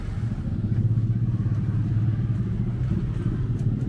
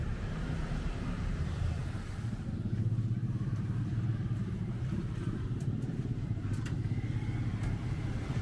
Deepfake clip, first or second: second